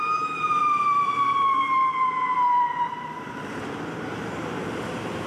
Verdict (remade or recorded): remade